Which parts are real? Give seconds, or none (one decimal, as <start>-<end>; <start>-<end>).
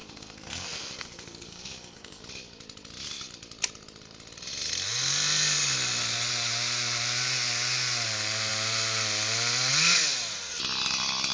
2.2-11.3